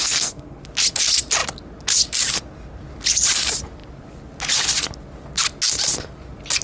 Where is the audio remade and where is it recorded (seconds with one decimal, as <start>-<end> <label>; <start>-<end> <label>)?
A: 0.0-0.6 remade; 0.6-6.6 recorded